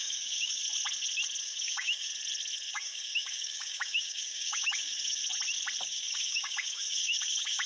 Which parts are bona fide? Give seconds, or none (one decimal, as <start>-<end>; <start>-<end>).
0.6-1.4; 2.1-2.7; 5.2-5.8